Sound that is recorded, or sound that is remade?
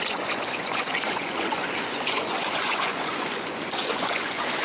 remade